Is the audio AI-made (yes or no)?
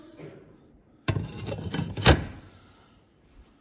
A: yes